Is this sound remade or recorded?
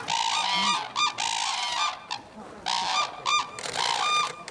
recorded